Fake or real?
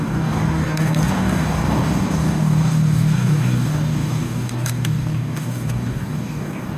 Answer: fake